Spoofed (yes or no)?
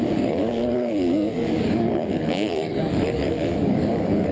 yes